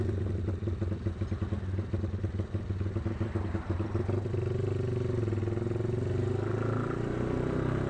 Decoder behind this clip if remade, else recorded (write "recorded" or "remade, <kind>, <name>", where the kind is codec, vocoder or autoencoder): recorded